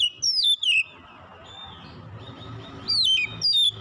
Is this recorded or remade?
recorded